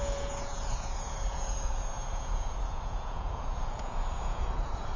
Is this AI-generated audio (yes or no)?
yes